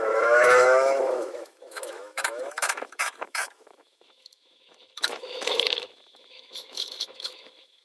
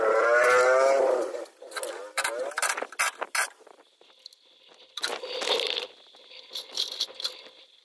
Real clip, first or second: second